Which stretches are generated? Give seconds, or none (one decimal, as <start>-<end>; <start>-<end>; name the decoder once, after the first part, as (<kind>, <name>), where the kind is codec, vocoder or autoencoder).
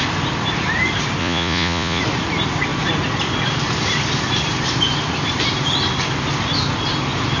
1.2-2.0 (vocoder, Vocos)